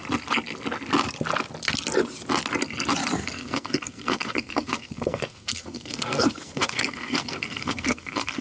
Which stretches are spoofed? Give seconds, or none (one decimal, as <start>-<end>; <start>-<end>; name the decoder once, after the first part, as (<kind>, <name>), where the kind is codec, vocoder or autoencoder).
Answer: 3.2-8.4 (codec, SNAC)